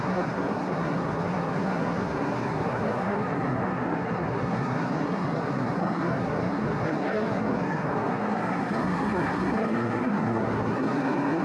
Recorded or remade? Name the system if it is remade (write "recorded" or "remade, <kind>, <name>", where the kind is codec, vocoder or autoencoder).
remade, codec, SNAC